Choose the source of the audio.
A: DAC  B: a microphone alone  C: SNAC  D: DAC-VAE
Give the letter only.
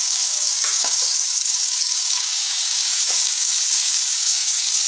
A